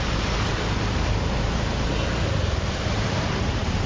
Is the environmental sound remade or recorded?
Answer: remade